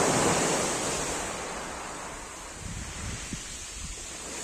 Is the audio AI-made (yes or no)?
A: no